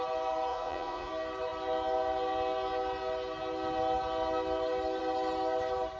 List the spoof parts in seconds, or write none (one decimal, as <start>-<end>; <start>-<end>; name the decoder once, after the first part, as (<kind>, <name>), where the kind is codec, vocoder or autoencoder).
0.5-1.1 (vocoder, Vocos)